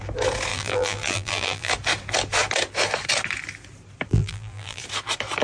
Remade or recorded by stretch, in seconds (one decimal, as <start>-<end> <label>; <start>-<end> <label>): 0.0-0.5 recorded; 0.5-1.7 remade; 1.7-4.1 recorded; 4.1-4.8 remade; 4.8-5.4 recorded